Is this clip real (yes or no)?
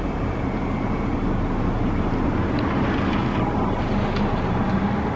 yes